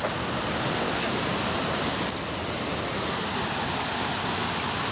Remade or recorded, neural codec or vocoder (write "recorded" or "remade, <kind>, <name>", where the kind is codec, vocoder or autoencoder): recorded